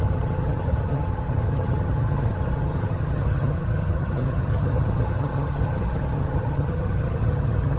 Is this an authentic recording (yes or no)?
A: no